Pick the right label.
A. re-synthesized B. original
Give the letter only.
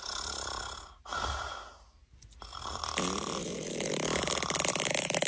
B